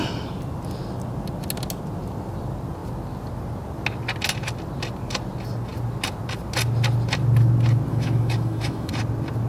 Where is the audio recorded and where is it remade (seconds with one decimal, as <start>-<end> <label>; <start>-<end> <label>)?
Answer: 0.0-7.9 recorded; 7.9-8.9 remade; 8.9-9.5 recorded